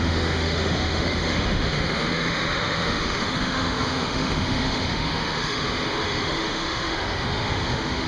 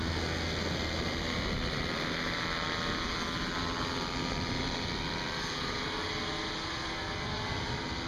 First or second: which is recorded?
second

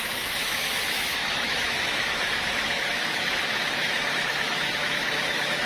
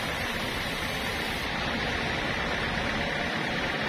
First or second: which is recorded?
second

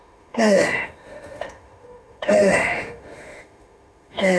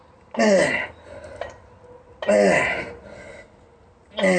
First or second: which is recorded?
second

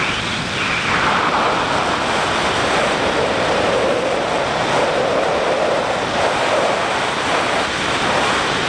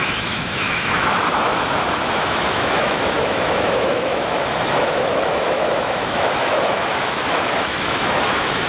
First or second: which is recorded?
first